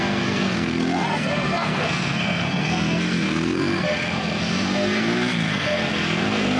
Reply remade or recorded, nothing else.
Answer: remade